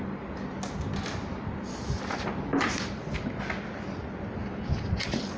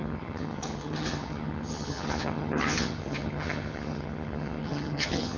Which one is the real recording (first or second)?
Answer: first